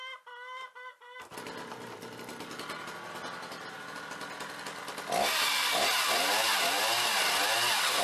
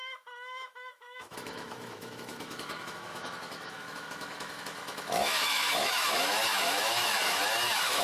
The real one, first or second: first